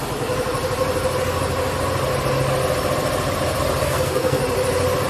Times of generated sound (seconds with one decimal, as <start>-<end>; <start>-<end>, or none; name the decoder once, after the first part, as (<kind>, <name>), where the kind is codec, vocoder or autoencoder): 3.8-4.4 (codec, SNAC)